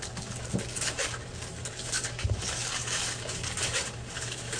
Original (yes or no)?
no